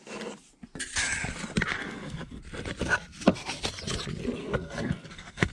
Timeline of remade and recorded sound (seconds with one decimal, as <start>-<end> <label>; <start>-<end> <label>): 0.0-1.7 recorded; 1.7-2.4 remade; 2.4-4.4 recorded; 4.4-5.5 remade